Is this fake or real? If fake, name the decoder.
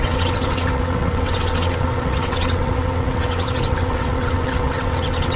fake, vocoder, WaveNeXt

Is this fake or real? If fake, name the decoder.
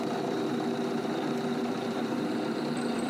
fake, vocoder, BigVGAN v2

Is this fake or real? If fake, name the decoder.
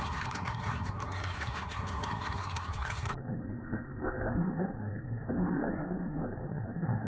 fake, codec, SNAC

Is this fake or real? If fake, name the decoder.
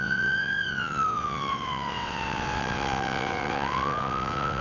fake, vocoder, WaveNeXt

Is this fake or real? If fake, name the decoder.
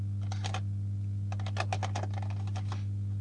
real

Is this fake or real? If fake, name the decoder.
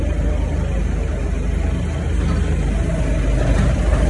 real